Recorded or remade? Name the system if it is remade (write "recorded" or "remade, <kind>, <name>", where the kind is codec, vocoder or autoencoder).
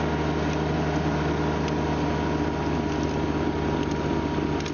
recorded